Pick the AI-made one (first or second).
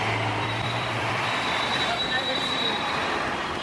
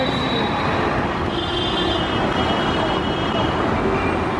first